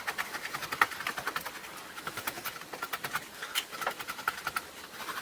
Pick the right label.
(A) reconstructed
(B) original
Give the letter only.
B